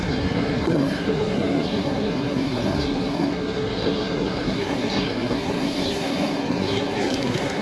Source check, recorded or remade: remade